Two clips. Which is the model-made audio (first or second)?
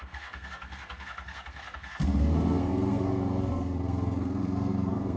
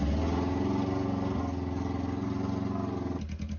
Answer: first